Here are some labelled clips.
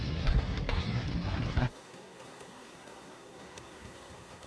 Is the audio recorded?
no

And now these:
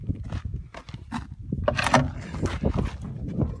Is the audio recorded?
yes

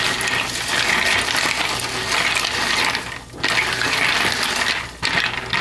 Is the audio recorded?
yes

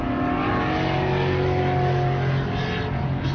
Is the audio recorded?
yes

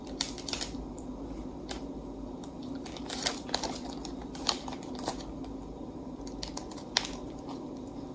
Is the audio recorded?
yes